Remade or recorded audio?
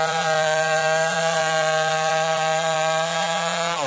remade